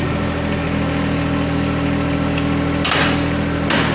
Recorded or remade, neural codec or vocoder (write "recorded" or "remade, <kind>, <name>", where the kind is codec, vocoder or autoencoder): recorded